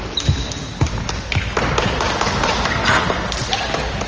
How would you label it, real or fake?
real